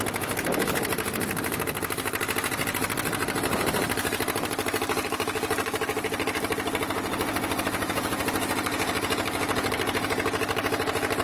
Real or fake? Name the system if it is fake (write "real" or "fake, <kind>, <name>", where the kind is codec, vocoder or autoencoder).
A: real